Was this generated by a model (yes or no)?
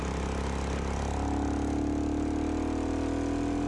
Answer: no